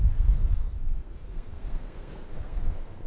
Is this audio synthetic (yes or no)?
yes